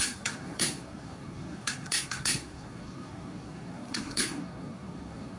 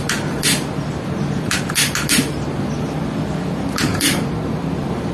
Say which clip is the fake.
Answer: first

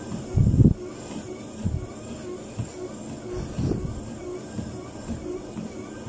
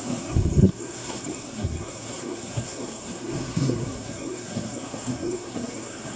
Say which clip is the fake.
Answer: second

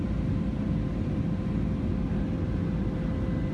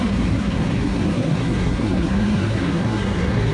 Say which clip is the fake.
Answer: second